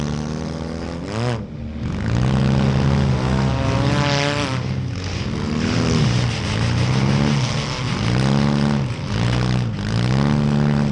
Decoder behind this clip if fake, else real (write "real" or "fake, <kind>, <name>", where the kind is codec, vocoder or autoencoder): real